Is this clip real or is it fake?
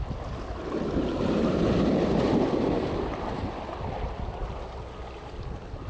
real